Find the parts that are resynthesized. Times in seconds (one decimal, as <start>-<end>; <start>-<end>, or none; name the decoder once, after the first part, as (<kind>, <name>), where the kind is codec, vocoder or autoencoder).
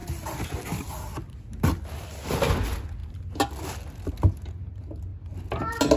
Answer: none